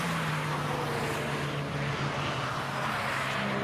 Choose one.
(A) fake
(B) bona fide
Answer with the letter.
B